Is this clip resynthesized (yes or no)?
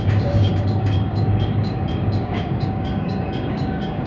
yes